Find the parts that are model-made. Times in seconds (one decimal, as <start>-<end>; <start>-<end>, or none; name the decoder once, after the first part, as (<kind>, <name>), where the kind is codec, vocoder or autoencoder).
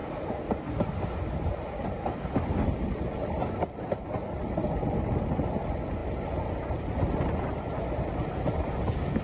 none